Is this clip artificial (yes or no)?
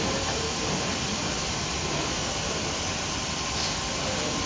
no